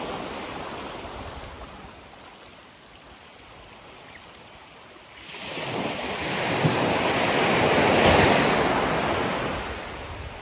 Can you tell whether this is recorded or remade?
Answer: recorded